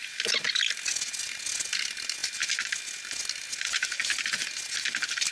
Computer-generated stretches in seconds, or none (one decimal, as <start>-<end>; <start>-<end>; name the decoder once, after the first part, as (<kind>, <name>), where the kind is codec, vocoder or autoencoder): none